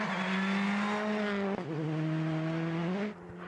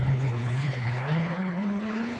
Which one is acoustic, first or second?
first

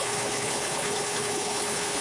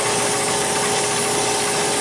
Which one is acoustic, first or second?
second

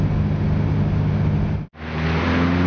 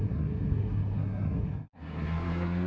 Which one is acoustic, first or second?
first